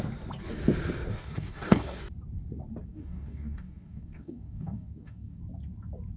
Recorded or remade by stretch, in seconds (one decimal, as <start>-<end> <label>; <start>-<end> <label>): 0.0-1.1 recorded; 1.1-2.0 remade; 2.0-2.9 recorded; 2.9-5.4 remade; 5.4-6.2 recorded